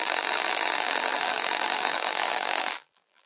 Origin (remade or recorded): remade